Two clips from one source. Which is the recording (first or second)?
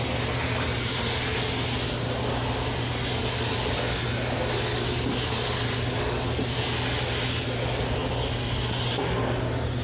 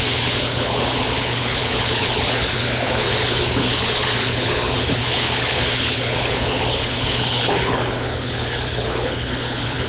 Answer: first